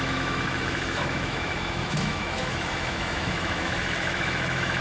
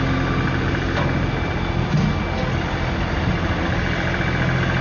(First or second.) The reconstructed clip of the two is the first